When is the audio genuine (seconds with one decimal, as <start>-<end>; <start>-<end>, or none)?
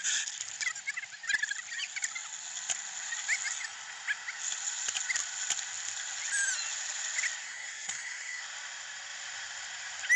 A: 0.0-7.4; 8.4-10.2